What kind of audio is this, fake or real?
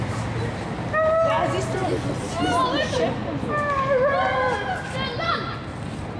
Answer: real